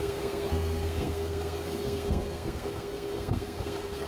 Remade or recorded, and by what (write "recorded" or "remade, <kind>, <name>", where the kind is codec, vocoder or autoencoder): remade, codec, SNAC